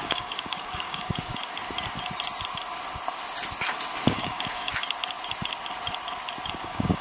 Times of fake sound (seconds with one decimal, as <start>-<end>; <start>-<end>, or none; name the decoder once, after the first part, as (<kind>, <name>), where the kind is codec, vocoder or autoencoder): 0.0-1.3 (codec, DAC); 4.1-4.7; 6.5-7.0